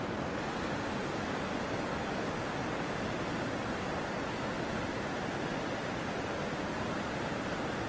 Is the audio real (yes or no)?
yes